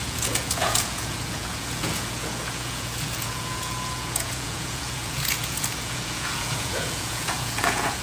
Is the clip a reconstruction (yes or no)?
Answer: yes